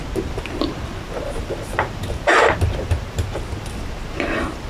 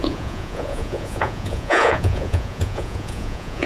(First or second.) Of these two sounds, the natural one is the first